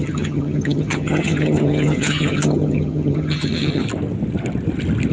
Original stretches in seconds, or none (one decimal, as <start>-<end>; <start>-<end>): 3.8-5.1